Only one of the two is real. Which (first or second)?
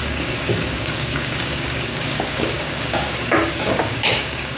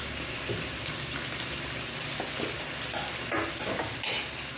second